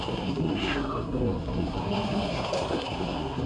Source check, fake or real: fake